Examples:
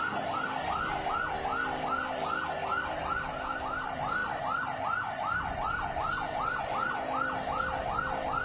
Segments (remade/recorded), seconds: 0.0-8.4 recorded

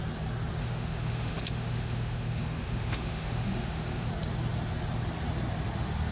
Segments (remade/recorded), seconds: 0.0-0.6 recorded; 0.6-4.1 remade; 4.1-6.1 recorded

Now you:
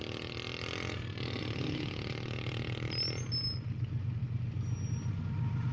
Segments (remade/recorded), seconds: 0.0-5.7 recorded

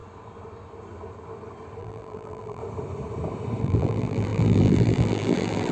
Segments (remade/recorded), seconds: 0.0-1.8 recorded; 1.8-2.6 remade; 2.6-3.6 recorded; 3.6-5.7 remade

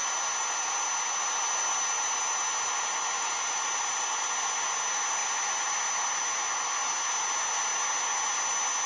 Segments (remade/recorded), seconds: 0.0-8.9 recorded